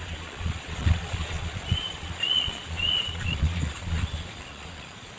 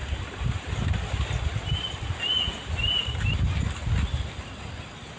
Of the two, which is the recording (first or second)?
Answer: second